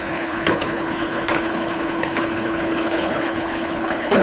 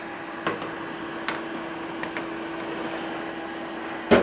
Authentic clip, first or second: second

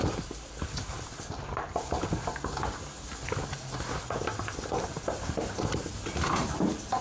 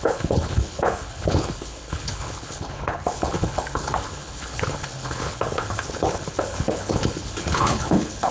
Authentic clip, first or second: first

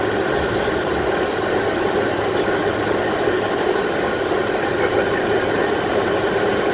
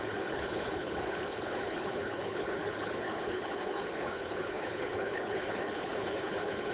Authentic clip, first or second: first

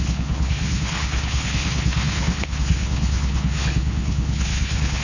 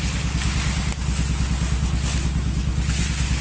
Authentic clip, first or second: second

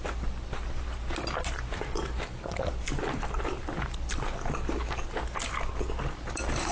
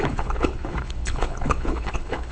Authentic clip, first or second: first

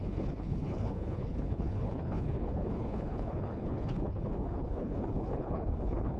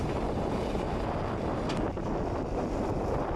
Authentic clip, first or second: second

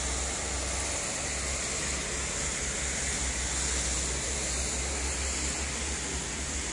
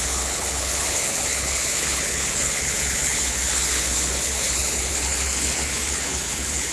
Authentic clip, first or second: first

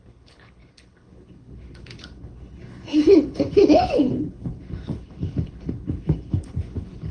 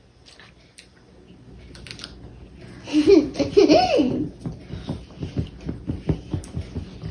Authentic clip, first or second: second